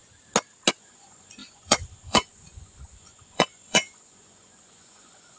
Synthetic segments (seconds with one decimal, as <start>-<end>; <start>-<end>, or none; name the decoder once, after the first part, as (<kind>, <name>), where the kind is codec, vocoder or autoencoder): 0.8-5.4 (vocoder, Vocos)

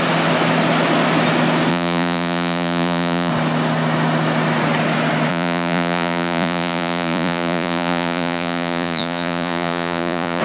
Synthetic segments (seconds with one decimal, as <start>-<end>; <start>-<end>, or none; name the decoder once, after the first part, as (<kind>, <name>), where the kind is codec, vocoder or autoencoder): 1.7-3.3 (vocoder, Vocos); 5.3-10.4

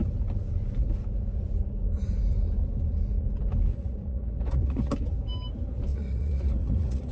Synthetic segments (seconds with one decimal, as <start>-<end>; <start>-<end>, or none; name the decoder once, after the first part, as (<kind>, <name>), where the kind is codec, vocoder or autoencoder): 3.7-4.9 (vocoder, Vocos); 5.9-7.1

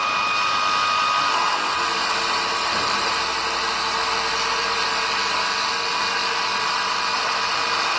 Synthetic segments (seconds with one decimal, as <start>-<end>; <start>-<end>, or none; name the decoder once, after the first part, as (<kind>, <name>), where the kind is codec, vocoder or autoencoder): none